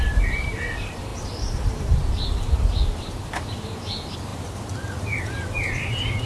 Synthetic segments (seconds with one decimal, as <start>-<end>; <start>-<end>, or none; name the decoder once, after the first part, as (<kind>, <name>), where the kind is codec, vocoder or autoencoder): none